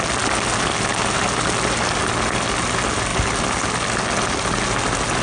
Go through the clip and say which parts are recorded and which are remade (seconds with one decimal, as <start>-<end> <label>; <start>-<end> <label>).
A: 0.0-5.2 recorded